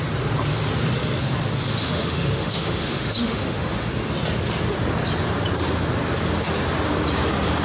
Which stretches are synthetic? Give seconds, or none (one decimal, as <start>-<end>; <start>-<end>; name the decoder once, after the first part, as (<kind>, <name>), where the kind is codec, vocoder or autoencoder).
1.7-3.9 (autoencoder, DAC-VAE)